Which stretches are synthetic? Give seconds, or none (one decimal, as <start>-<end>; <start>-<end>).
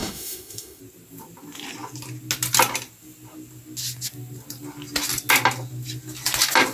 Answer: 0.0-0.8